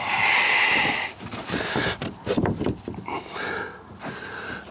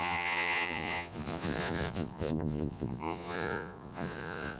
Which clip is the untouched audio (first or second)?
first